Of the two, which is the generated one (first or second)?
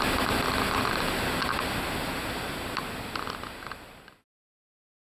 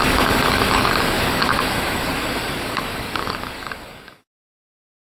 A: second